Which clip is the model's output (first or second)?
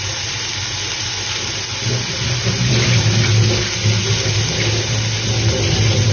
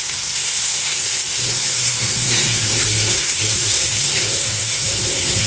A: second